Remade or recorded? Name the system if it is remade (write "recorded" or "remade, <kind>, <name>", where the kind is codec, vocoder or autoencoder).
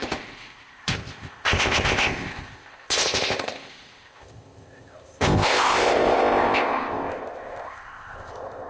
remade, codec, ZipCodec